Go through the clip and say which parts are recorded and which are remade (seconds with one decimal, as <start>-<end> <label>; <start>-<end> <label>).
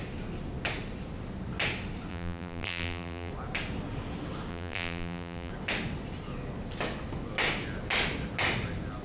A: 0.0-2.1 recorded; 2.1-3.3 remade; 3.3-4.5 recorded; 4.5-5.5 remade; 5.5-9.0 recorded